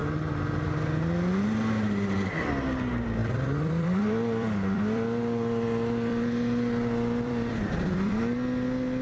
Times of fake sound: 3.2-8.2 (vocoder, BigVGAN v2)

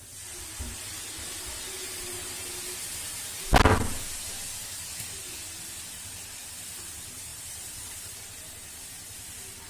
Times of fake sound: 7.3-8.1 (vocoder, BigVGAN v2)

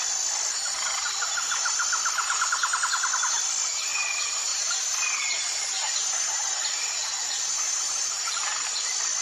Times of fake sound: 4.5-8.3 (vocoder, BigVGAN v2)

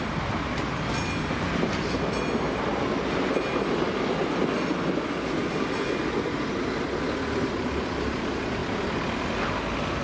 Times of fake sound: 8.6-9.6 (vocoder, BigVGAN v2)

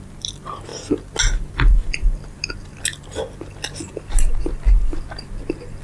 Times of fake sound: none